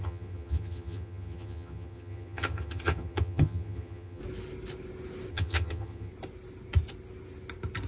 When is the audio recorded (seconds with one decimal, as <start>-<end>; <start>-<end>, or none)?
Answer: 4.2-5.3; 6.1-7.9